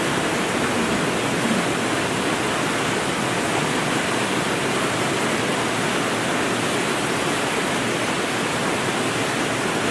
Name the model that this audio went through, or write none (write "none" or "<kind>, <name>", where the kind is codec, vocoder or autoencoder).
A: none